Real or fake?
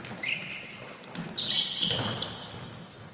real